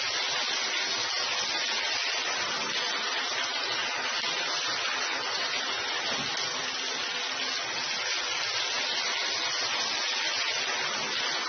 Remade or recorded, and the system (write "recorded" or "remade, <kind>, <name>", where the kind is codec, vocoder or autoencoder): recorded